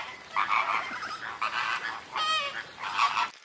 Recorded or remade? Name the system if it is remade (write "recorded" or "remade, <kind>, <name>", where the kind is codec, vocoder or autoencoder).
recorded